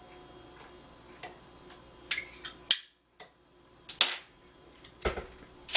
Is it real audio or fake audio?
real